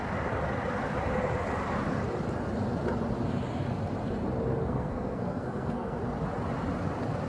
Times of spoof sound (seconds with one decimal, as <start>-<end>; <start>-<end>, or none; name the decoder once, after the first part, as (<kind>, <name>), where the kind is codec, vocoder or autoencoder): 4.6-6.0 (codec, SNAC)